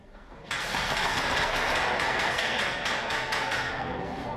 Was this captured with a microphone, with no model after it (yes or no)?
no